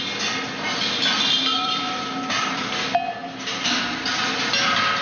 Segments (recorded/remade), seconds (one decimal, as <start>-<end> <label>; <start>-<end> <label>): 0.0-1.5 recorded; 1.5-2.7 remade; 2.7-3.2 recorded; 3.2-3.8 remade; 3.8-5.0 recorded